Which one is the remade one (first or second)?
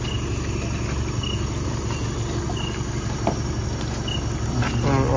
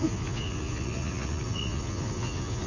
second